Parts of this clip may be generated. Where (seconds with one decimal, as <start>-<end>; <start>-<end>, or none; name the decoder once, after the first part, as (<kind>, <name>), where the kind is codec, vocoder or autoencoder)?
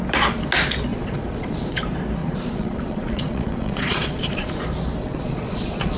0.9-1.8 (vocoder, Vocos); 2.2-4.5; 5.0-6.0